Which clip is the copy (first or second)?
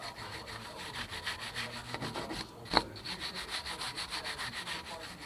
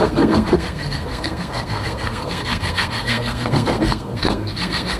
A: second